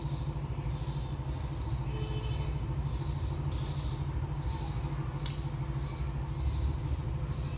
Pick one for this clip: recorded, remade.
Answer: recorded